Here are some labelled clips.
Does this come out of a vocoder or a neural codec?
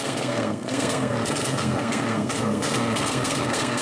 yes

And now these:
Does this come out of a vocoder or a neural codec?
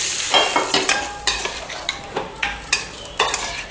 no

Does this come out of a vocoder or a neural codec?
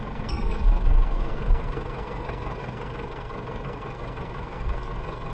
yes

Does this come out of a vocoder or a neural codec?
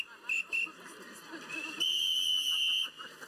no